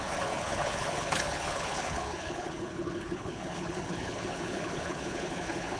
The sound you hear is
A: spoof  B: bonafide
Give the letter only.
A